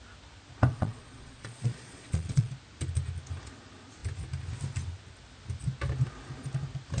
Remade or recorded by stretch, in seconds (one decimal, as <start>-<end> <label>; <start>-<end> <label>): 0.0-0.7 recorded; 0.7-2.5 remade; 2.5-7.0 recorded